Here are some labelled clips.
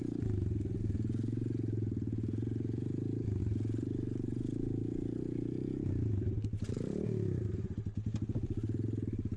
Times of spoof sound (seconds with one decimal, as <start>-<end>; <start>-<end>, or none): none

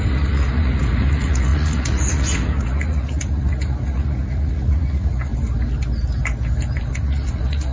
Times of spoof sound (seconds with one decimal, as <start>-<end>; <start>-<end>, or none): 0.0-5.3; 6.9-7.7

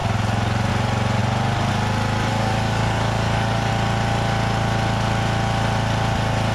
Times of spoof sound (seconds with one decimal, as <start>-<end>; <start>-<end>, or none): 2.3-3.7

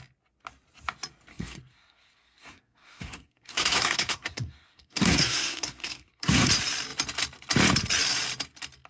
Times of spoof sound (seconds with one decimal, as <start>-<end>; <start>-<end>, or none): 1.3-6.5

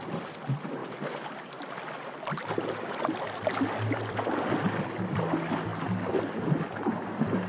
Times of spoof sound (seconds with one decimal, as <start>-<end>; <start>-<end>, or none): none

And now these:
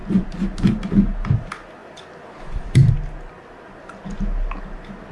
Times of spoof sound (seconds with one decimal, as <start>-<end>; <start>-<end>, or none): 1.8-2.9